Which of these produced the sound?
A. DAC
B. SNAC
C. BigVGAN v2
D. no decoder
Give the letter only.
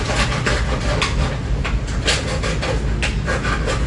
D